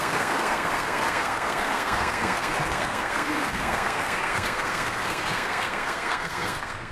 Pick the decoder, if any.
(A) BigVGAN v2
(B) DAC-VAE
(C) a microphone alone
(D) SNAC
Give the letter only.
D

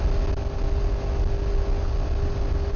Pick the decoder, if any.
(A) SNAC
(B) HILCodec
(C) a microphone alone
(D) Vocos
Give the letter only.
C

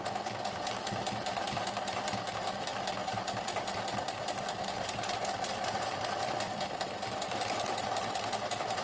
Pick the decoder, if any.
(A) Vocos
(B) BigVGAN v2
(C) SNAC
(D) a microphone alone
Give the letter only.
B